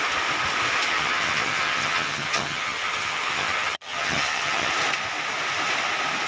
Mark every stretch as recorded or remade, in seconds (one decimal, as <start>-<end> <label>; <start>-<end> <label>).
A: 0.0-0.9 recorded; 0.9-4.7 remade; 4.7-6.3 recorded